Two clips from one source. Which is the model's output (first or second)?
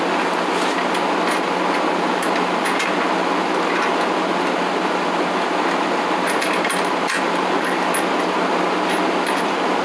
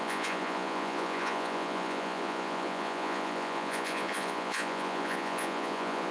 second